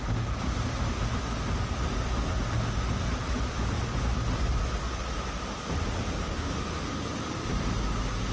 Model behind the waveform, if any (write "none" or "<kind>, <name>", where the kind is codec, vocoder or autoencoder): none